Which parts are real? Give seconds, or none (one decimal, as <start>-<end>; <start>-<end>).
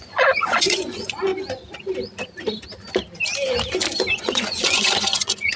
1.3-4.2